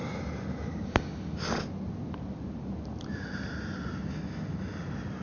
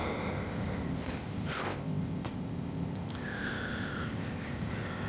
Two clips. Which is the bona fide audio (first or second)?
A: first